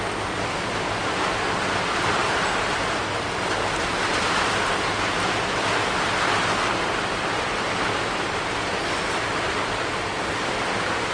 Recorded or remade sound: recorded